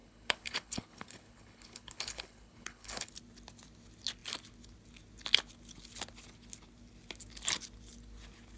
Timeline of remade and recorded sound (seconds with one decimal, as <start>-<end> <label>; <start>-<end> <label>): 0.0-3.1 remade; 3.1-8.6 recorded